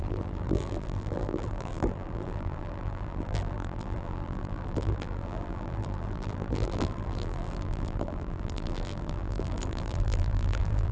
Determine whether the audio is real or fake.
fake